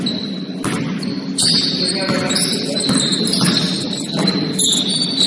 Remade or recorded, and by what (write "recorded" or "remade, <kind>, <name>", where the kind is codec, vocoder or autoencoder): recorded